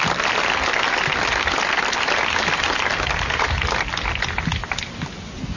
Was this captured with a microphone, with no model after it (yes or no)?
yes